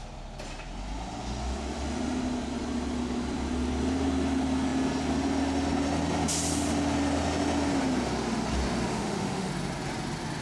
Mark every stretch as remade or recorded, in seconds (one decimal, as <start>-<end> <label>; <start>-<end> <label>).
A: 0.0-8.9 recorded; 8.9-9.5 remade; 9.5-10.4 recorded

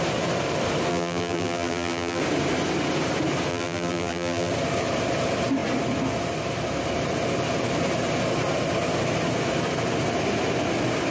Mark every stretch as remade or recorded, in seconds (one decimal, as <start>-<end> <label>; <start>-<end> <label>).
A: 0.0-0.9 recorded; 0.9-2.2 remade; 2.2-3.5 recorded; 3.5-4.5 remade; 4.5-11.1 recorded

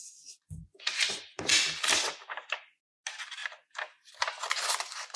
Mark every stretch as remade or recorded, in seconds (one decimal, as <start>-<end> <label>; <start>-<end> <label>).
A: 0.0-0.6 recorded; 0.6-1.5 remade; 1.5-5.2 recorded

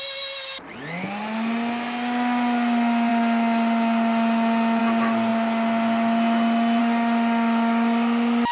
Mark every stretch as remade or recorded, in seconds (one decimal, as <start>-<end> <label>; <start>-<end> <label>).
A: 0.0-8.5 recorded

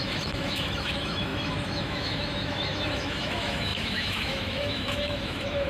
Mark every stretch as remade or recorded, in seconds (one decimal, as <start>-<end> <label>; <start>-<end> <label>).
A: 0.0-5.7 remade

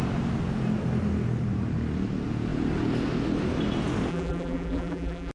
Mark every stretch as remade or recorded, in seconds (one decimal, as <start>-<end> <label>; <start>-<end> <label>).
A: 0.0-4.1 recorded; 4.1-5.3 remade

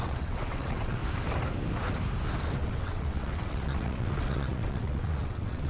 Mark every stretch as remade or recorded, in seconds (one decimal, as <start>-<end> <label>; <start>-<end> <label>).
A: 0.0-1.0 remade; 1.0-2.6 recorded; 2.6-5.7 remade